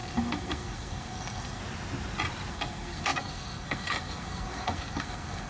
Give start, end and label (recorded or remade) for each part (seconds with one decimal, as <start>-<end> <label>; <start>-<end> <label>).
0.0-1.6 remade; 1.6-2.5 recorded; 2.5-5.5 remade